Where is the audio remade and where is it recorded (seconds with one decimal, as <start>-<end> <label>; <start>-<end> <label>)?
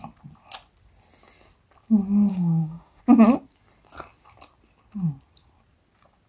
0.0-2.3 recorded; 2.3-3.0 remade; 3.0-6.3 recorded